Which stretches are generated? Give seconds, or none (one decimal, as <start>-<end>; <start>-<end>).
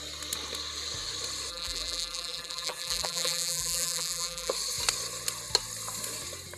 1.5-4.5